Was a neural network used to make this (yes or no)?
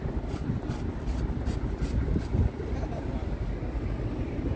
no